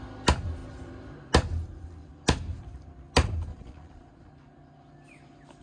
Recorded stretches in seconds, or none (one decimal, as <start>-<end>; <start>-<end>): 0.0-3.5; 4.3-5.6